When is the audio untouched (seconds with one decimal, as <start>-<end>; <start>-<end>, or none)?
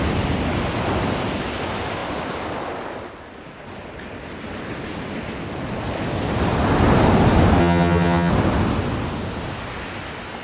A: 0.0-7.6; 8.3-10.4